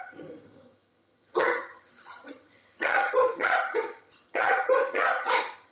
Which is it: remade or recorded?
remade